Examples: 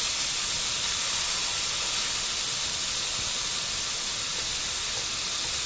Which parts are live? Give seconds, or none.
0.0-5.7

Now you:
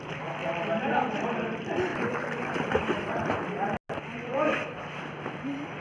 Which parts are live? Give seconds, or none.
0.0-1.9; 3.2-5.8

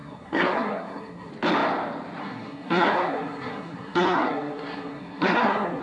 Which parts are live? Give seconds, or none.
1.3-2.2

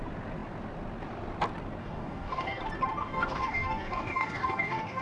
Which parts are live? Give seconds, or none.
0.0-1.8; 2.6-3.0

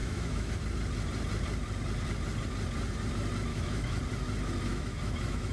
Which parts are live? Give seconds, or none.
0.5-3.5; 4.0-4.7